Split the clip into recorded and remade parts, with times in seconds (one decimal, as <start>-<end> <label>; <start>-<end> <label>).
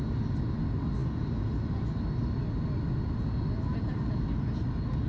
0.0-5.1 recorded